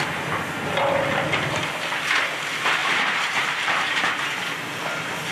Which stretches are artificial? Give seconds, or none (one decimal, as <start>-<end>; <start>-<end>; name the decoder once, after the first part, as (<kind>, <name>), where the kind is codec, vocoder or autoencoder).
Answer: 2.8-4.3 (vocoder, BigVGAN v2)